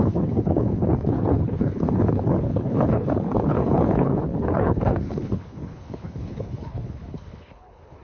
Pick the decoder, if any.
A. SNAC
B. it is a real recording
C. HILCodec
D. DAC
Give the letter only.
C